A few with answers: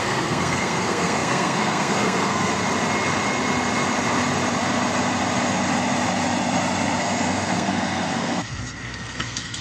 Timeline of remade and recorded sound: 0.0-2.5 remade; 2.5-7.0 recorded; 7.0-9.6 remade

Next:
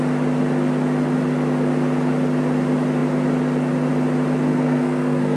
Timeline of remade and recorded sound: 0.0-4.5 recorded; 4.5-5.4 remade